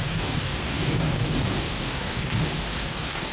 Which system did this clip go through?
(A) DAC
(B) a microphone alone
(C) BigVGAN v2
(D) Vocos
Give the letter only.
A